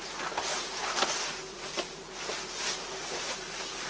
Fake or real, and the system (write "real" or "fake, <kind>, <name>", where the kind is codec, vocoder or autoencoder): real